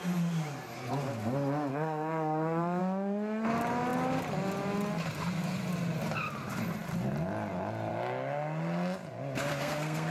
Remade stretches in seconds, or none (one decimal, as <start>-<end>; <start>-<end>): 1.7-2.8; 9.5-10.1